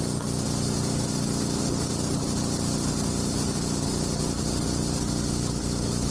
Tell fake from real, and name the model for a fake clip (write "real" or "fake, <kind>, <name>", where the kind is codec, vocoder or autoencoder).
real